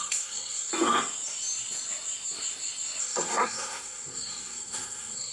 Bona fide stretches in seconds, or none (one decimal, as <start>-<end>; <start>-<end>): 0.7-3.0